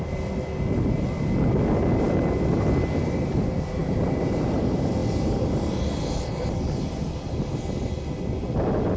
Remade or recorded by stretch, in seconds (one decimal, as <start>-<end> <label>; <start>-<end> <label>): 0.0-3.8 recorded; 3.8-4.6 remade; 4.6-9.0 recorded

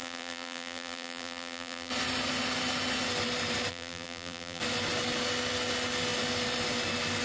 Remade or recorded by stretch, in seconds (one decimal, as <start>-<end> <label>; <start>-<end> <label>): 0.0-1.9 remade; 1.9-3.7 recorded; 3.7-4.6 remade; 4.6-7.2 recorded